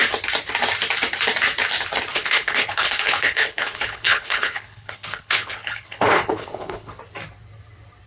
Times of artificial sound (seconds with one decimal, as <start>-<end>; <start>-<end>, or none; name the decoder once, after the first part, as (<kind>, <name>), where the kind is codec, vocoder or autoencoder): 2.1-7.0 (codec, HILCodec)